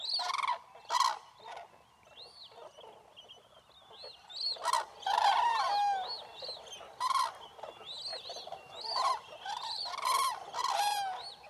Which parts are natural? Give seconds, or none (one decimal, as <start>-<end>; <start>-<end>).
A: 0.0-8.1; 9.9-11.5